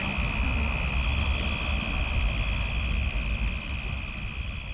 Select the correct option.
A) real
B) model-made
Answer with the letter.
A